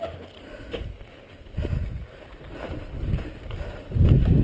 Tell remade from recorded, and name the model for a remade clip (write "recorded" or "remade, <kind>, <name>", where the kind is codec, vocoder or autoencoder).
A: recorded